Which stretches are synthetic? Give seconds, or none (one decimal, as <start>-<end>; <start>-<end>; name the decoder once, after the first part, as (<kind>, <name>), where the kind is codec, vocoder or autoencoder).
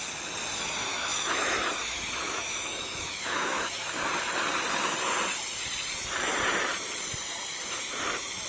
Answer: 0.8-4.1 (autoencoder, DAC-VAE)